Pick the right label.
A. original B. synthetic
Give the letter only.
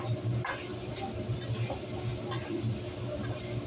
A